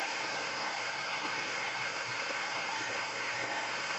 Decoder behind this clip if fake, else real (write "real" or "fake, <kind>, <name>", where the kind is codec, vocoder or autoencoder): fake, codec, SNAC